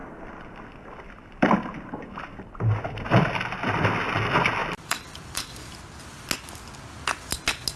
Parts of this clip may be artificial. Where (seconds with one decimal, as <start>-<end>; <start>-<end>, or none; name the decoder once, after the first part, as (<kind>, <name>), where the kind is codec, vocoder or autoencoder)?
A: 0.0-3.2 (vocoder, BigVGAN v2); 4.6-5.6